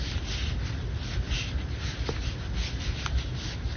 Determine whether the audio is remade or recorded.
recorded